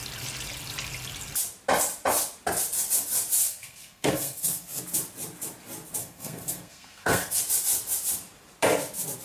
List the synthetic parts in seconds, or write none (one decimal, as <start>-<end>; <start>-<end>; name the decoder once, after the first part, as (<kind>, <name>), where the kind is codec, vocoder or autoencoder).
3.4-4.8 (codec, SNAC); 6.0-7.4